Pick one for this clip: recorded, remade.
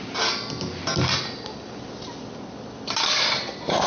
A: recorded